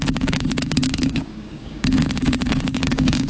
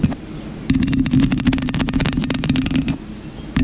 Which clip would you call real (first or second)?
second